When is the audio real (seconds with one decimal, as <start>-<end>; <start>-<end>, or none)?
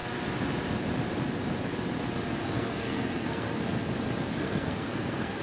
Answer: 0.0-2.4; 3.6-4.3